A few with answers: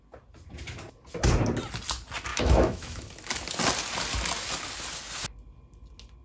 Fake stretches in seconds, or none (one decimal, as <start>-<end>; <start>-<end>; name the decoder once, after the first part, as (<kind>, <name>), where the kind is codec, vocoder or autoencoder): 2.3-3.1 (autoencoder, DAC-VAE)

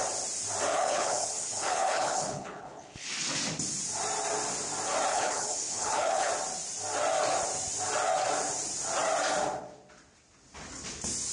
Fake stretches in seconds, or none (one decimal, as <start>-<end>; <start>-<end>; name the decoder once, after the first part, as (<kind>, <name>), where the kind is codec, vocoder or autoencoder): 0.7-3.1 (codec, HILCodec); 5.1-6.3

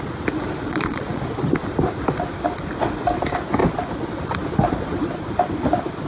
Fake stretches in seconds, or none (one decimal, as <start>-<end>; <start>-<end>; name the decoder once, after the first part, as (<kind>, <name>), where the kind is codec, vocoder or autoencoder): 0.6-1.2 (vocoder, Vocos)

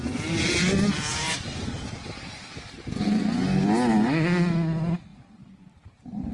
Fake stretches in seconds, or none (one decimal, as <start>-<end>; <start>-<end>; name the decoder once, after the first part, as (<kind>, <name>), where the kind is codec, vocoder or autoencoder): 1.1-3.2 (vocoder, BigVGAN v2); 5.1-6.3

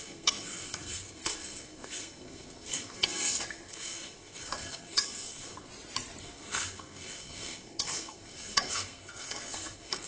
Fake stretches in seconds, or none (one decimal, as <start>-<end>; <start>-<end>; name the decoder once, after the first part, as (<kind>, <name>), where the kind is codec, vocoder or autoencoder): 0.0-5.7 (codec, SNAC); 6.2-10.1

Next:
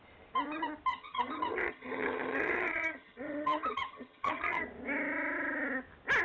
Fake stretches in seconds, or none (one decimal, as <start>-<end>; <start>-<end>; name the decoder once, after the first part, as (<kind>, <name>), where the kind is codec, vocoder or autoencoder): 0.9-4.6 (vocoder, HiFi-GAN)

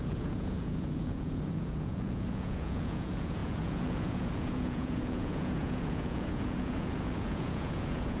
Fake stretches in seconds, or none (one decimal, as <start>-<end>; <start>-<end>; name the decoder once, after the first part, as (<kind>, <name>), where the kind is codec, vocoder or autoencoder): 0.0-8.2 (vocoder, Vocos)

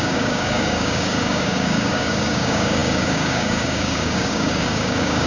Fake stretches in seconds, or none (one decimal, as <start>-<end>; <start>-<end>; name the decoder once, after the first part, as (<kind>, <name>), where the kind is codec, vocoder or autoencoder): 0.0-5.3 (codec, DAC)